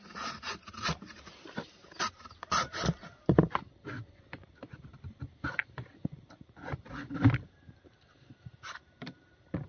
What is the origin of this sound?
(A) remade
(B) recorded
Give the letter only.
A